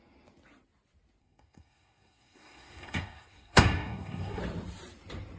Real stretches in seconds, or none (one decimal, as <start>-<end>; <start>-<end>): 0.0-1.2; 4.4-5.4